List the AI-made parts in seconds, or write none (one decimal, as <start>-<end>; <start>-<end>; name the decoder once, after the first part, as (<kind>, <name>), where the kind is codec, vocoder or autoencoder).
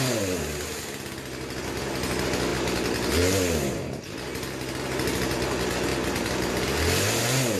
none